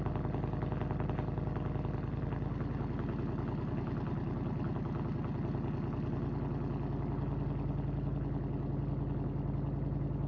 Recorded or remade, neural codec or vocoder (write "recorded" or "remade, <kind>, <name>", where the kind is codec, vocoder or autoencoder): recorded